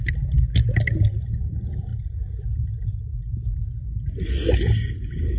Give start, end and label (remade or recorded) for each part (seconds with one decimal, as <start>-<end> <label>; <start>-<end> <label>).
0.0-5.4 recorded